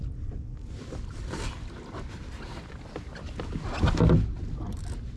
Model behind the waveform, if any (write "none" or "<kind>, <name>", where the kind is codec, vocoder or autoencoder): none